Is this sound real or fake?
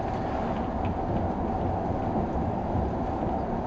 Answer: real